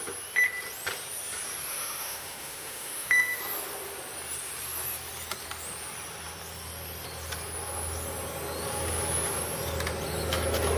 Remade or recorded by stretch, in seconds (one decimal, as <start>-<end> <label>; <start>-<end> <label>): 0.0-1.7 recorded; 1.7-3.4 remade; 3.4-10.8 recorded